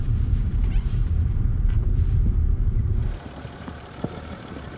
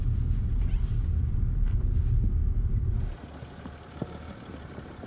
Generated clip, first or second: first